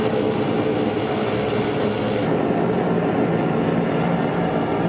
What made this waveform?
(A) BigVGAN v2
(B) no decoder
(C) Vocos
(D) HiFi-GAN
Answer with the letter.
B